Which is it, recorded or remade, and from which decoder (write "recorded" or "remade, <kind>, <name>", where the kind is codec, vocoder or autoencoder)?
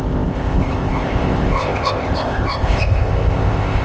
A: remade, codec, ZipCodec